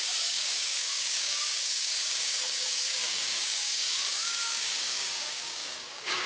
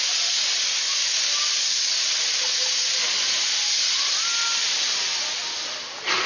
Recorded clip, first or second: second